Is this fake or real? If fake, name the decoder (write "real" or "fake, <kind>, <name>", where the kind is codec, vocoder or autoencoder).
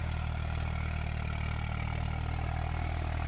real